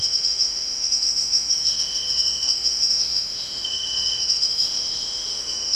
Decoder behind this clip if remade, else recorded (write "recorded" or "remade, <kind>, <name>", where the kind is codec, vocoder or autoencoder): remade, autoencoder, DAC-VAE